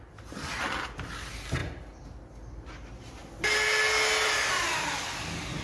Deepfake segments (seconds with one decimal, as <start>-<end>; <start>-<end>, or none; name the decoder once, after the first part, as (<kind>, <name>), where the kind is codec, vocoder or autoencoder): none